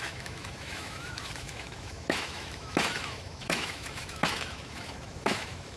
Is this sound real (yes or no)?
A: no